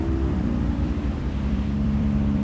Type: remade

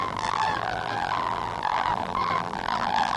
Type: remade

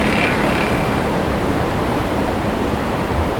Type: remade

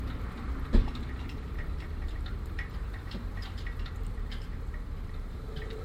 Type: remade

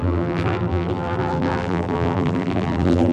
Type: remade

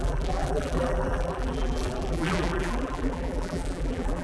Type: remade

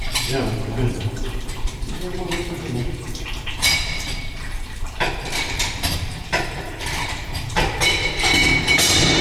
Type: remade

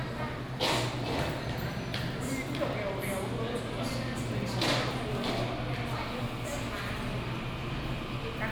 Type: recorded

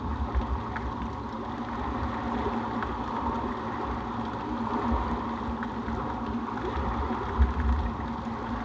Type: recorded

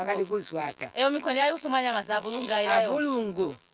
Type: remade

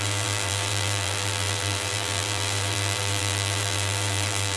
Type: remade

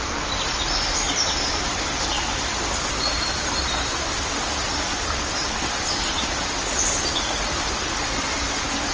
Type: recorded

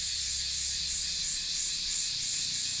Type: remade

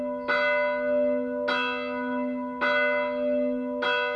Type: recorded